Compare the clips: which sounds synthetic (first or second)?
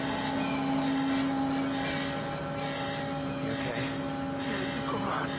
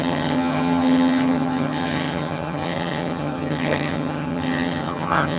second